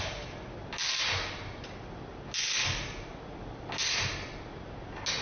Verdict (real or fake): real